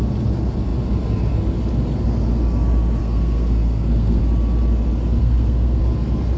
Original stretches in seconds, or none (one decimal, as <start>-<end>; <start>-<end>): 0.0-3.0; 4.2-5.2; 5.8-6.4